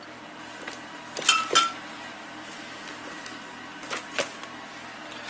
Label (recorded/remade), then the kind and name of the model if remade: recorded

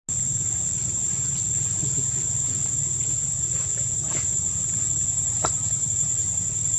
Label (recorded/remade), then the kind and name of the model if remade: recorded